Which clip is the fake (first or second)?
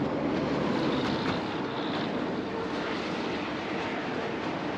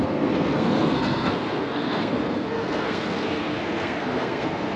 second